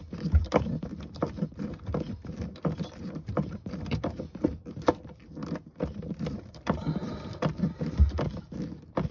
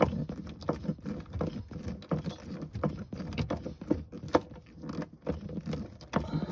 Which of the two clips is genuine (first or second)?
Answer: second